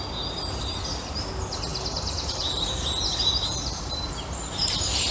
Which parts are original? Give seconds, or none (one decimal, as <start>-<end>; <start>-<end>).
0.0-5.1